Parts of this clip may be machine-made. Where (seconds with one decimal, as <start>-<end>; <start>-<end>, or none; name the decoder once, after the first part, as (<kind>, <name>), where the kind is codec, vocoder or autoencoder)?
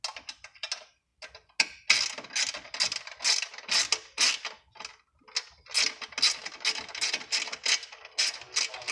none